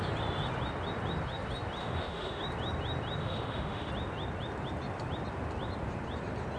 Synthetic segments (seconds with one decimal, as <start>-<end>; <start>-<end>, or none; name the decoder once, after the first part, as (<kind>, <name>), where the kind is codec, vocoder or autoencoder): 1.8-2.4 (autoencoder, DAC-VAE); 3.2-3.9